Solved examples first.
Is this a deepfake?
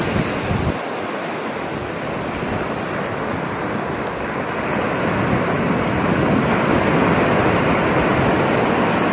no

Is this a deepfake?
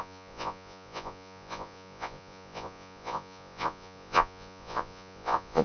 yes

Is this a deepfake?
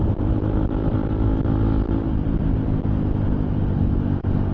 no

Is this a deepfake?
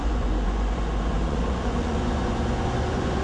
yes